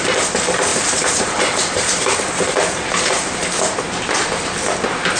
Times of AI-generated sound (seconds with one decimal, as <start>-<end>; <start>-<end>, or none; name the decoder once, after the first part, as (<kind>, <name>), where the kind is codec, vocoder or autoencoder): 0.7-3.3 (vocoder, BigVGAN v2)